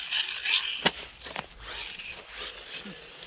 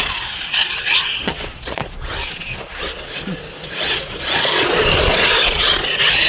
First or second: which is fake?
second